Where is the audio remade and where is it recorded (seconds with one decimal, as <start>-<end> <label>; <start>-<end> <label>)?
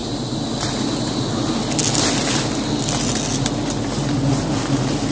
0.0-5.1 recorded